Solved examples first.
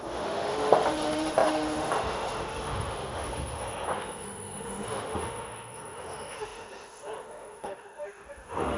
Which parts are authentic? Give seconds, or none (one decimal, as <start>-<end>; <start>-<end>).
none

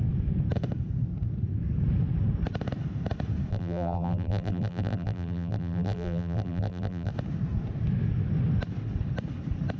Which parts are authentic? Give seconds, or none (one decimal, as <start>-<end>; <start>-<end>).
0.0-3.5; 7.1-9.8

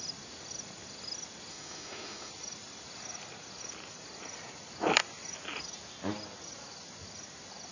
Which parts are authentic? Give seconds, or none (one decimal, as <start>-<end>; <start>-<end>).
0.0-1.5; 2.3-7.7

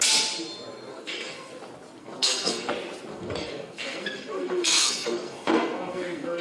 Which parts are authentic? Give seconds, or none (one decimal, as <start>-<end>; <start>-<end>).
0.0-0.9; 1.5-2.0; 2.7-3.1

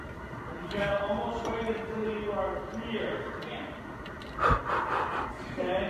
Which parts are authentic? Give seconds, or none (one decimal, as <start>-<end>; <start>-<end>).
2.0-5.5

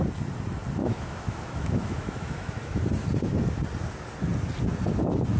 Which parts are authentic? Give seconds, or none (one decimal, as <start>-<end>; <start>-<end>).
0.0-0.8; 2.8-5.4